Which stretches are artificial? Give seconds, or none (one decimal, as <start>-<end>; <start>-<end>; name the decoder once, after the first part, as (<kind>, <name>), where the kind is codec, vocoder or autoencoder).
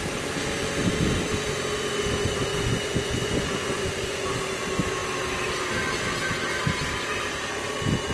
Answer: 2.5-4.4 (vocoder, Vocos)